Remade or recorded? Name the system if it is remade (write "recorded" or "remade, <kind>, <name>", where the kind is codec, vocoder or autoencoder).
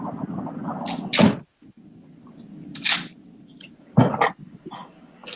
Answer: recorded